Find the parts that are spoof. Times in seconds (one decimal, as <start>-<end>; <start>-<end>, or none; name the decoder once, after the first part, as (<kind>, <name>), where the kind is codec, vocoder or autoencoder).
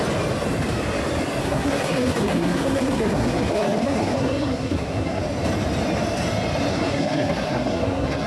1.4-5.2 (codec, SNAC); 6.7-8.3